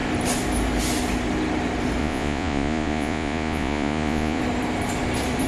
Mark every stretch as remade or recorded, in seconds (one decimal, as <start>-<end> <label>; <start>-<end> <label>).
0.0-2.0 recorded; 2.0-4.4 remade; 4.4-5.5 recorded

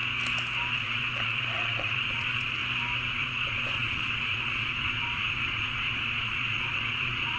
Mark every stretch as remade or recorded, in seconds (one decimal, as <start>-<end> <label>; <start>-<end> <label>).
0.0-0.7 recorded; 0.7-2.6 remade; 2.6-3.1 recorded; 3.1-7.4 remade

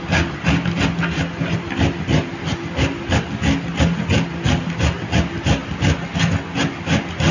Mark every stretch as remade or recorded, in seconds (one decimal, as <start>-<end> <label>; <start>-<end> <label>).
0.0-7.3 recorded

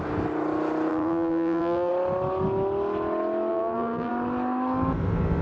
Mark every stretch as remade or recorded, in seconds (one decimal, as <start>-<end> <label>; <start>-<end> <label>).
0.0-0.9 recorded; 0.9-1.9 remade; 1.9-3.5 recorded; 3.5-4.1 remade; 4.1-5.4 recorded

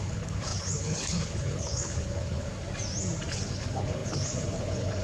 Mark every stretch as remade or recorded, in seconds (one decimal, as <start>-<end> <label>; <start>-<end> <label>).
0.0-2.5 remade; 2.5-3.3 recorded; 3.3-5.0 remade

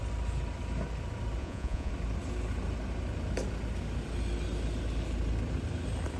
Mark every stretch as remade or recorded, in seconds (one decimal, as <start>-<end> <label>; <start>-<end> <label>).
0.0-1.4 recorded; 1.4-1.9 remade; 1.9-6.2 recorded